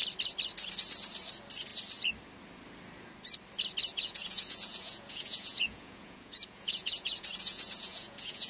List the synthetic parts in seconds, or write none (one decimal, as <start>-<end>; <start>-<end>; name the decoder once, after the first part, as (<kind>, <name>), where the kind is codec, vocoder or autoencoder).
3.9-8.5 (vocoder, Vocos)